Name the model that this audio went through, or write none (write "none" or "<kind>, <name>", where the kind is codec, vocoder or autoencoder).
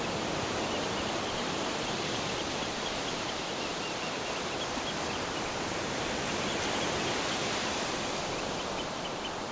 vocoder, BigVGAN v2